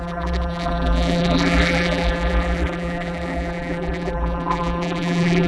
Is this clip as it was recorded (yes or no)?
no